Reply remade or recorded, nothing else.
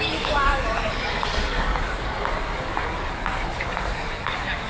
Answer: remade